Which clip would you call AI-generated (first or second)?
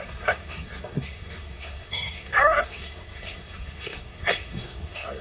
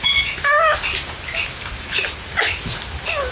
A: first